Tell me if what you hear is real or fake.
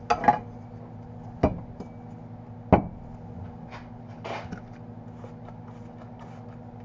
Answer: real